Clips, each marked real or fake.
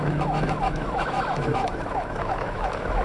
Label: fake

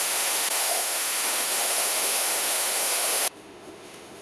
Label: fake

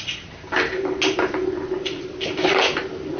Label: real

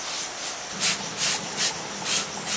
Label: real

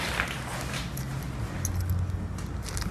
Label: real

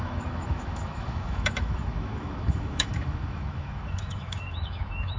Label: fake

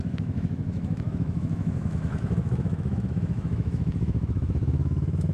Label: fake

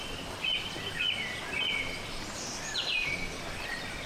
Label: real